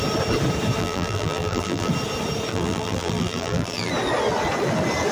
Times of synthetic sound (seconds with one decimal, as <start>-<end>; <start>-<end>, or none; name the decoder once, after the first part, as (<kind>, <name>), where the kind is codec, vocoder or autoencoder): 0.8-1.9 (vocoder, BigVGAN v2); 2.5-3.9